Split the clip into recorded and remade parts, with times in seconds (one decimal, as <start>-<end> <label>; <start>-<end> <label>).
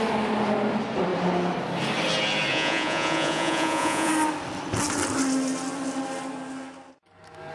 0.0-2.5 recorded; 2.5-4.1 remade; 4.1-7.5 recorded